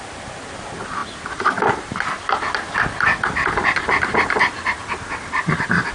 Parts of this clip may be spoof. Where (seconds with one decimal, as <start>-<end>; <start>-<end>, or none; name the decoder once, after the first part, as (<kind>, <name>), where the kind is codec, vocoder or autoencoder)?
none